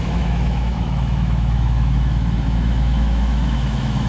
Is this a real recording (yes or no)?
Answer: no